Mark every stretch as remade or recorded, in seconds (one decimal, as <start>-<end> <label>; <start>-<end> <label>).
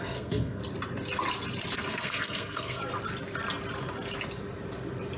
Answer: 0.0-0.6 remade; 0.6-1.9 recorded; 1.9-2.8 remade; 2.8-5.2 recorded